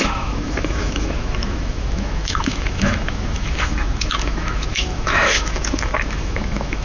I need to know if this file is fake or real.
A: fake